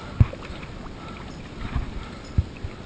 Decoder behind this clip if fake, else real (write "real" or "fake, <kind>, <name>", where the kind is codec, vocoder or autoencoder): real